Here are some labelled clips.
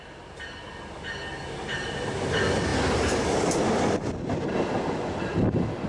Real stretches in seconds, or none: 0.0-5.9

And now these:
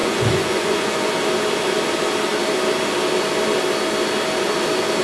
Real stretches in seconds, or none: 1.1-5.0

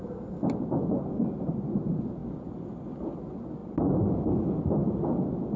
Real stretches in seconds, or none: 0.0-5.6